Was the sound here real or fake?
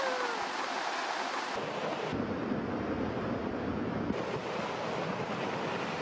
real